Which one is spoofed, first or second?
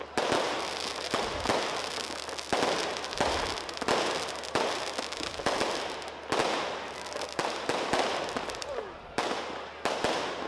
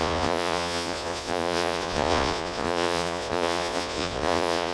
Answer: second